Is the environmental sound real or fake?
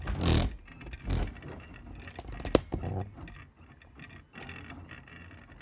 real